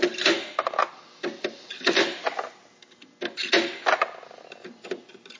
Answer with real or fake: real